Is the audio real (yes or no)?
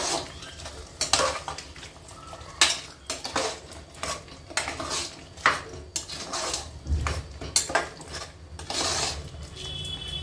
yes